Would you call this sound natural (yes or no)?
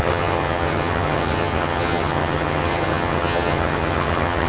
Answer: no